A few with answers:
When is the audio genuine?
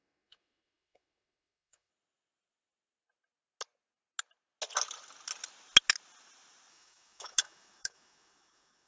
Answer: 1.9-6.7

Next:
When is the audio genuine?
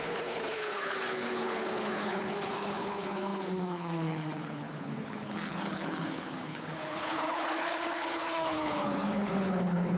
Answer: none